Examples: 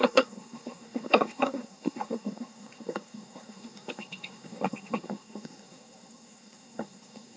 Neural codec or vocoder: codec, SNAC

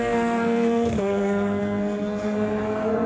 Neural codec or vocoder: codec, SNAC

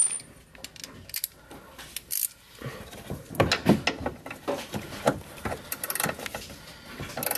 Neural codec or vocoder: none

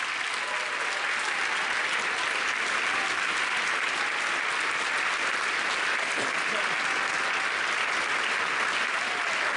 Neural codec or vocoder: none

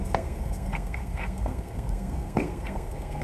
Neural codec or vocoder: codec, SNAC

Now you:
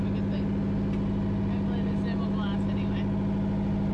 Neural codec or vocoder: none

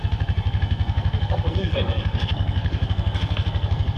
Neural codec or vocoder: codec, SNAC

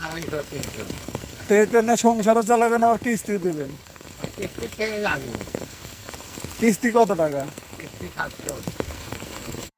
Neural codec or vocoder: codec, SNAC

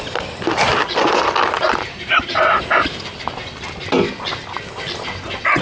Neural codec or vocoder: none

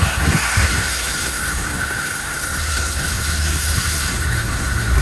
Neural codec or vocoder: codec, SNAC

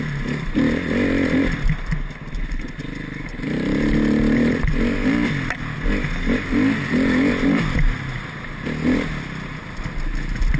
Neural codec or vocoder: none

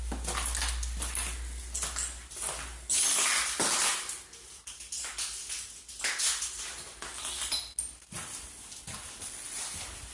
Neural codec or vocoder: none